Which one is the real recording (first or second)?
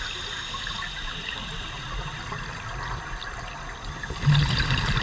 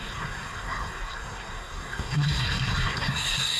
first